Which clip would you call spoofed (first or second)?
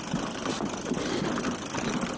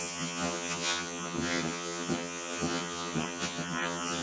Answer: second